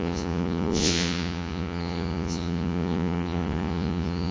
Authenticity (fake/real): fake